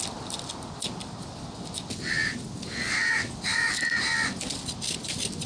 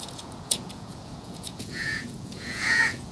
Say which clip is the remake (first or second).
second